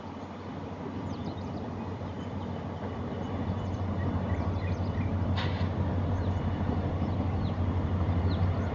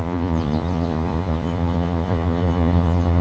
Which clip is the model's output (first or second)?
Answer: second